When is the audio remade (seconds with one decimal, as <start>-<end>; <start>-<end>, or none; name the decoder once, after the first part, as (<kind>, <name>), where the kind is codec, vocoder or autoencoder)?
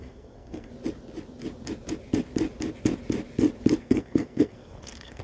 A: 0.0-0.7 (codec, SNAC); 3.8-5.2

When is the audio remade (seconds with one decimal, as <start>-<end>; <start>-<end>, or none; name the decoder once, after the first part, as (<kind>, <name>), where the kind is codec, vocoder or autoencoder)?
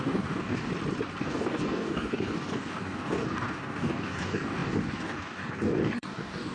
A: 0.0-0.7 (codec, DAC); 1.2-6.5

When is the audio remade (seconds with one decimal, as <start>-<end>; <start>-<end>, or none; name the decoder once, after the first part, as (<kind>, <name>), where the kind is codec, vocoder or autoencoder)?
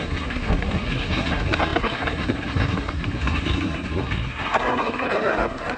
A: 0.0-5.8 (codec, SNAC)